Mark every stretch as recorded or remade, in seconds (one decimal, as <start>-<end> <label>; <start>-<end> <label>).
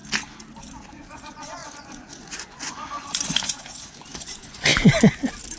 0.0-0.9 recorded; 0.9-4.7 remade; 4.7-5.6 recorded